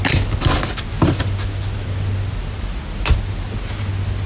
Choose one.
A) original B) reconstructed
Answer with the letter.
A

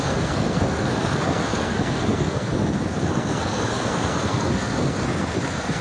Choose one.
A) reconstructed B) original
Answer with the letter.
A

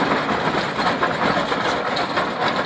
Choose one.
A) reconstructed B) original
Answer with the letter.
B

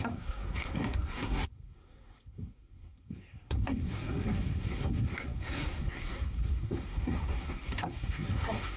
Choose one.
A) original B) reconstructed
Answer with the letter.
B